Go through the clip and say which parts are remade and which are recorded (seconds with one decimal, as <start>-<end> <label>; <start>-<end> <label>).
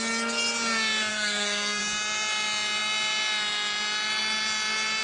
0.0-1.1 recorded; 1.1-1.8 remade; 1.8-5.0 recorded